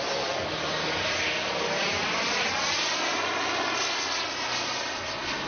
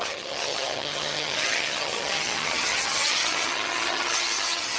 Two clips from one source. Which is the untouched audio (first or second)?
first